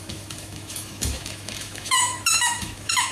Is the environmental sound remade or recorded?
remade